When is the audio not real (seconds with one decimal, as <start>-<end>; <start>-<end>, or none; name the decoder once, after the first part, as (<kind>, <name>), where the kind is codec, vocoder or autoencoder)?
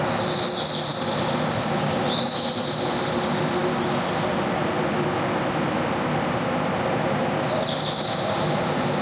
none